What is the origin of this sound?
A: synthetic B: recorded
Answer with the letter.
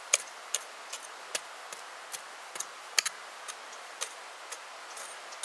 B